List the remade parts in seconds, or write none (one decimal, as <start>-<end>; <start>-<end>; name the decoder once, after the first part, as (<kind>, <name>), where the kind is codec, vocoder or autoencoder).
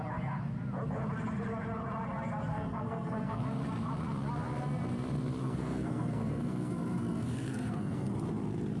2.5-3.4 (codec, SNAC); 5.4-8.1